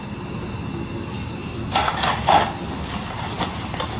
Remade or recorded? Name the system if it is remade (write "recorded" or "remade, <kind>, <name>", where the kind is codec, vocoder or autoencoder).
recorded